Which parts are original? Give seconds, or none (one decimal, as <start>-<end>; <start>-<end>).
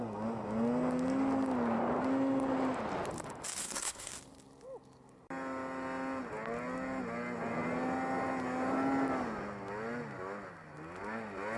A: 0.0-3.6; 4.1-11.6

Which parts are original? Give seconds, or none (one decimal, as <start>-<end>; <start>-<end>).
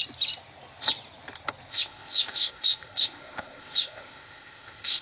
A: 0.0-1.7